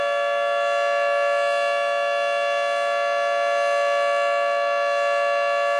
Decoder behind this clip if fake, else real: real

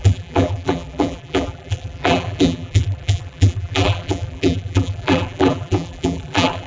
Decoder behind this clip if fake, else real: fake, vocoder, BigVGAN v2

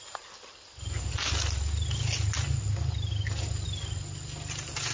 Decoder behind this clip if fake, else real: real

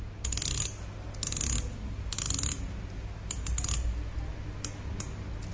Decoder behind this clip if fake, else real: real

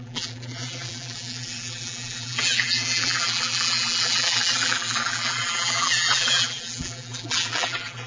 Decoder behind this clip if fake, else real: fake, vocoder, BigVGAN v2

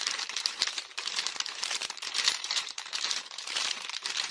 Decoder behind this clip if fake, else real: fake, vocoder, BigVGAN v2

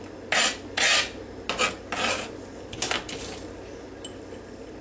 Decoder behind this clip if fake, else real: real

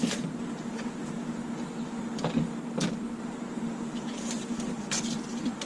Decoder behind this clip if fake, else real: real